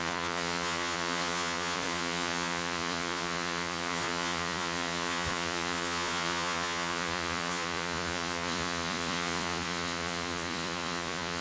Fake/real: fake